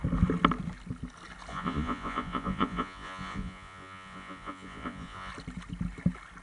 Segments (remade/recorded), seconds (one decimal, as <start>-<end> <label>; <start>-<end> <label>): 0.0-1.5 recorded; 1.5-5.3 remade; 5.3-6.4 recorded